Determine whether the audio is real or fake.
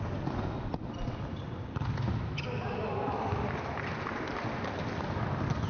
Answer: real